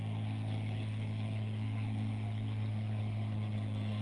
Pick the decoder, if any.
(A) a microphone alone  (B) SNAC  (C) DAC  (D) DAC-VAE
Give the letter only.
B